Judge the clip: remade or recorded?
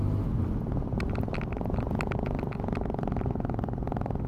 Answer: recorded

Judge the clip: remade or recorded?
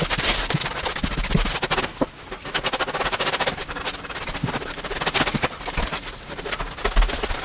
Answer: recorded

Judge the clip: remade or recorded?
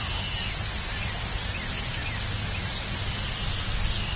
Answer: recorded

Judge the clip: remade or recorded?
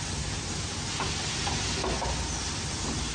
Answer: recorded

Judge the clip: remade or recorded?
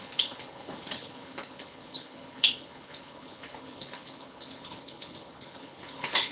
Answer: remade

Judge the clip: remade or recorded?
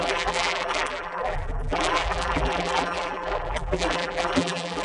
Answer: remade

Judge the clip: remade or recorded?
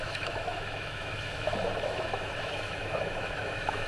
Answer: remade